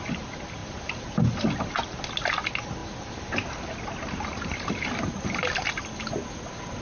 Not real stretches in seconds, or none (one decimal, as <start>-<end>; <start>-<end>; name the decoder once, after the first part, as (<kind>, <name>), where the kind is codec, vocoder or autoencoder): none